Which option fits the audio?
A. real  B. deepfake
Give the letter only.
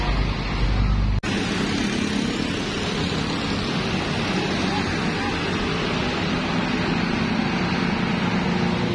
A